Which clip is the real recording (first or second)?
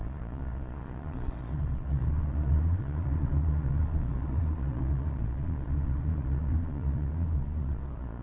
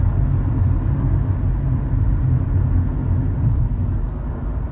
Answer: second